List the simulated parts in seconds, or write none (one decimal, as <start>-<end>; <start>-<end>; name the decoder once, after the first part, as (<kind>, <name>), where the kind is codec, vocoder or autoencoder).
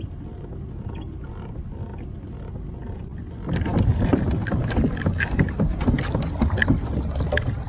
none